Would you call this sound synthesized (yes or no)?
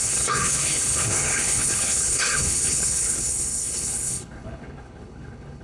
yes